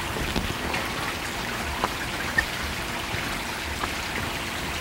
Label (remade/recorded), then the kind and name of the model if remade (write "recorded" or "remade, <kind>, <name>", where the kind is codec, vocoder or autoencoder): recorded